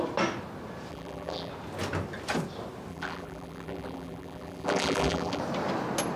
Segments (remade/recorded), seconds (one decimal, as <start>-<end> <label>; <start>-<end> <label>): 0.0-0.9 recorded; 0.9-1.5 remade; 1.5-2.9 recorded; 2.9-5.4 remade; 5.4-6.2 recorded